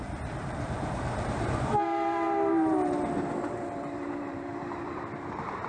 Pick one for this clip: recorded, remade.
remade